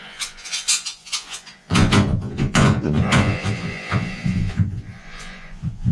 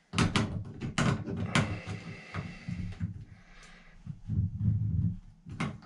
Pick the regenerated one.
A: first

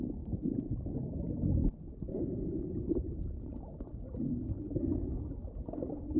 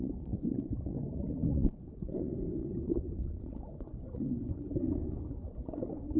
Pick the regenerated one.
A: second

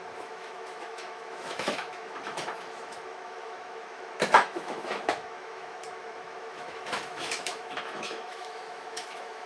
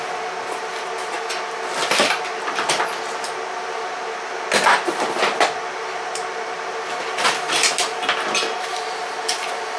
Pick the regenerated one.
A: first